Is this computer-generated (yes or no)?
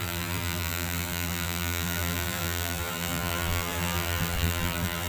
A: yes